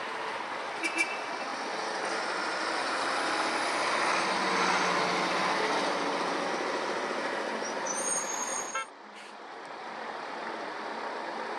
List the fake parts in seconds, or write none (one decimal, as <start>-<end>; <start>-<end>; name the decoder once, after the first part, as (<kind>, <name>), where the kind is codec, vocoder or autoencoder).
none